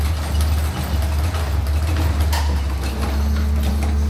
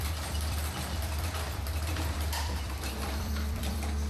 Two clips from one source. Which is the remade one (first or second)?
second